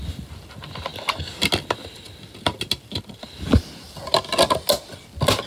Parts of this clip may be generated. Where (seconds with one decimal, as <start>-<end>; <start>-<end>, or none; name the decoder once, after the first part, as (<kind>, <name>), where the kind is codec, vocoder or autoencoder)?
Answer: none